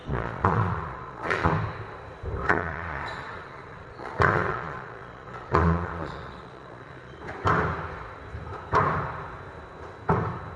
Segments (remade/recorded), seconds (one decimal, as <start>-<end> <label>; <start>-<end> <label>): 0.0-1.5 remade; 1.5-2.4 recorded; 2.4-7.2 remade; 7.2-10.6 recorded